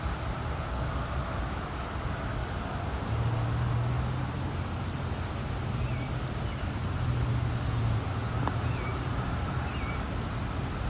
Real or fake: real